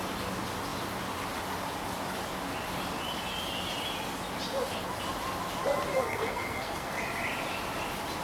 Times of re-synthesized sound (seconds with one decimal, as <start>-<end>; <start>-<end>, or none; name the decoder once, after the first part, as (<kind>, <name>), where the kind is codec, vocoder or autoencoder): 5.9-7.0 (codec, SNAC)